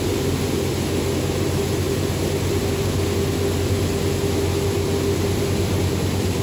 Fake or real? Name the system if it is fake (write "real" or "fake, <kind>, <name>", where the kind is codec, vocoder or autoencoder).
real